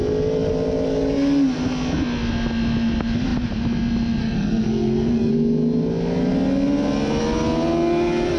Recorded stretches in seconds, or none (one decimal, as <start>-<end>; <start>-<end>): 0.0-4.2; 5.3-8.4